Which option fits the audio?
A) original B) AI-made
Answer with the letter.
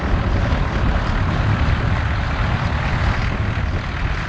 A